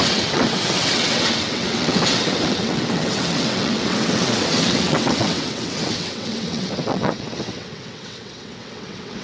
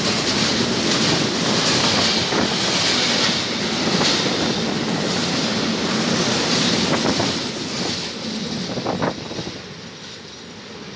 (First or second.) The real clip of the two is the second